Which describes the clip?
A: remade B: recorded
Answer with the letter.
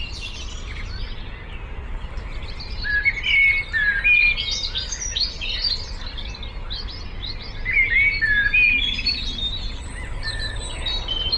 B